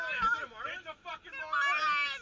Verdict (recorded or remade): recorded